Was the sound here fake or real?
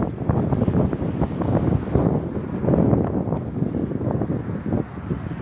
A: real